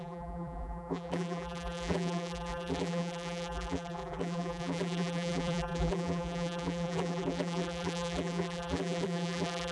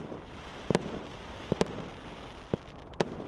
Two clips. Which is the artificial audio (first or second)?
first